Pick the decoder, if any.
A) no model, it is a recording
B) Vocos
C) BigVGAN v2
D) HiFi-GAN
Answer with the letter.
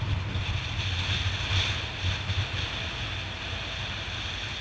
A